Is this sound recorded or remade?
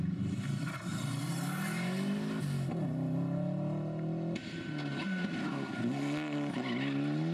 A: recorded